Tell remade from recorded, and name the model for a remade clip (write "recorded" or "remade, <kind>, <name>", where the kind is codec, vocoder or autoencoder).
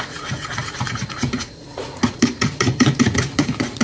remade, vocoder, Vocos